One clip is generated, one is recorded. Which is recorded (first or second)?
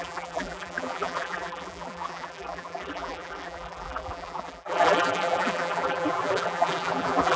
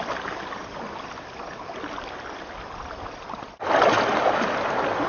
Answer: second